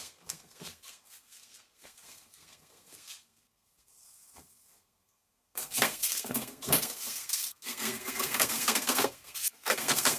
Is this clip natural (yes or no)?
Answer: no